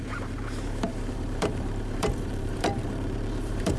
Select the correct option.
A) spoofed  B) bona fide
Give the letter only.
A